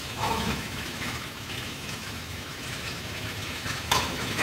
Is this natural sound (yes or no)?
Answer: no